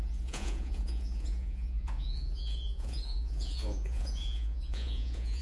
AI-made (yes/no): yes